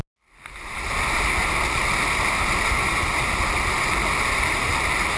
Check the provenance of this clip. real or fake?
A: real